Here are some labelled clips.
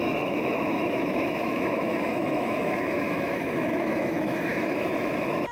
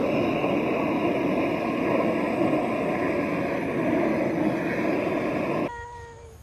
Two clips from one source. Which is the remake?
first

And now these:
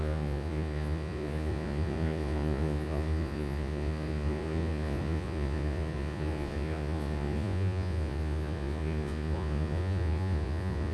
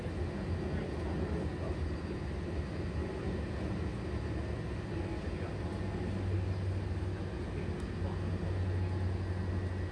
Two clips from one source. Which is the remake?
first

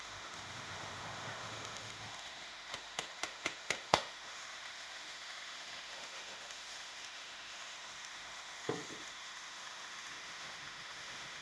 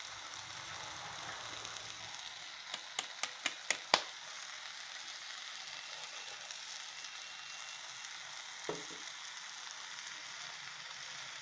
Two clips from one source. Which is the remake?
first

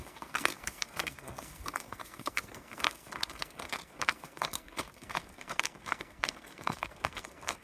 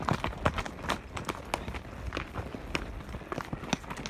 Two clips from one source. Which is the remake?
first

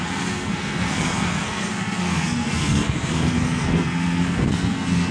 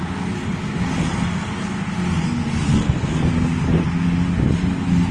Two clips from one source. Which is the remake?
first